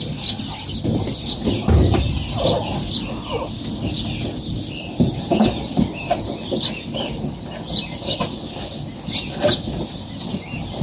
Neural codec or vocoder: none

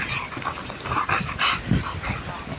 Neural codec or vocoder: none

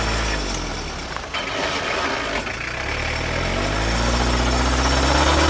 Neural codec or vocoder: none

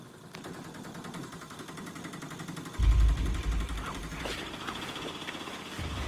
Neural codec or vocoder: vocoder, BigVGAN v2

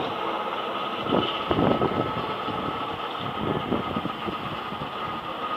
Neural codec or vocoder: none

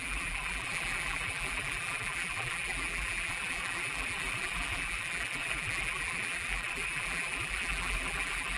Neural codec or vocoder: vocoder, BigVGAN v2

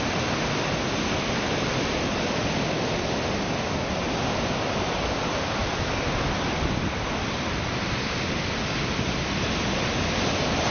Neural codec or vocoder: none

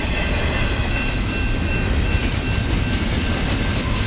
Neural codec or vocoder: none